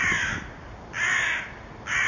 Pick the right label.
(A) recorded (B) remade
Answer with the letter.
A